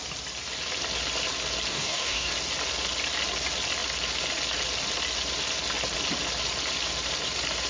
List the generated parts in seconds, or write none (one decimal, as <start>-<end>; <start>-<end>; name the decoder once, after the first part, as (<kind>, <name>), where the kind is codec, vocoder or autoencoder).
1.7-2.3 (codec, DAC)